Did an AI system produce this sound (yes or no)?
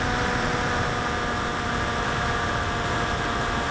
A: no